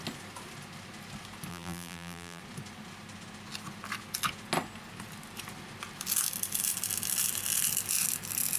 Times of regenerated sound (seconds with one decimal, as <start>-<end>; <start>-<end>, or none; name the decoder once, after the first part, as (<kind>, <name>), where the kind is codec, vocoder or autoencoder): 1.5-2.4 (vocoder, BigVGAN v2)